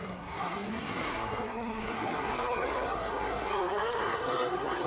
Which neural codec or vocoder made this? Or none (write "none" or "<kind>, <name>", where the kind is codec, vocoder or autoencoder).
codec, SNAC